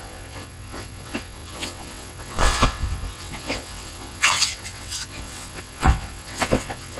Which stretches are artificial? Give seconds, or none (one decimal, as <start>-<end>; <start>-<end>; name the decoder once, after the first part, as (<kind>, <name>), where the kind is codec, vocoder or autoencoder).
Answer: 0.0-7.0 (vocoder, WaveNeXt)